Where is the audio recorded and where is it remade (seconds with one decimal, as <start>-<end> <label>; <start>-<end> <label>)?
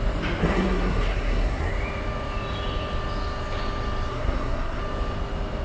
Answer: 0.0-0.4 recorded; 0.4-1.7 remade; 1.7-4.1 recorded; 4.1-4.8 remade; 4.8-5.6 recorded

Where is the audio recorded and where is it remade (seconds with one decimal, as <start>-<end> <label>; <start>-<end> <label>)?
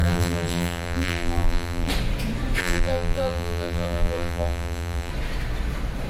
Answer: 0.0-1.9 remade; 1.9-2.6 recorded; 2.6-5.1 remade; 5.1-6.1 recorded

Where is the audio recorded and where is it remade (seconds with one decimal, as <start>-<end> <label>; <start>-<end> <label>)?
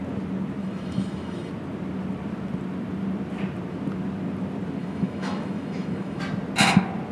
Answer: 0.0-0.6 recorded; 0.6-1.5 remade; 1.5-4.8 recorded; 4.8-6.2 remade; 6.2-7.1 recorded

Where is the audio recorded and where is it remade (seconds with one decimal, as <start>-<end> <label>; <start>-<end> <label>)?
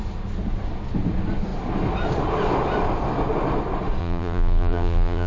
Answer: 0.0-4.0 recorded; 4.0-5.3 remade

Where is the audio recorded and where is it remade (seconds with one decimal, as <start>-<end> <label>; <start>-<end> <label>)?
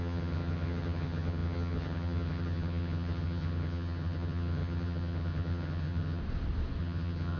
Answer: 0.0-6.2 remade; 6.2-6.8 recorded; 6.8-7.4 remade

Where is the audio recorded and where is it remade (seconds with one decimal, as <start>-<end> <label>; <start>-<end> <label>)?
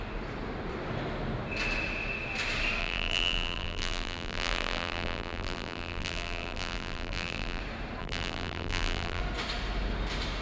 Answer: 0.0-2.8 recorded; 2.8-7.6 remade; 7.6-8.0 recorded; 8.0-9.2 remade; 9.2-10.4 recorded